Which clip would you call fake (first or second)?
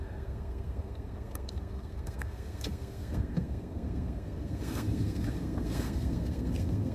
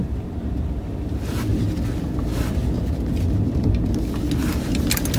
first